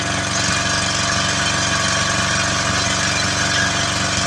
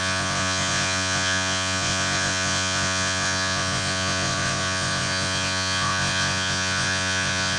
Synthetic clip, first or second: second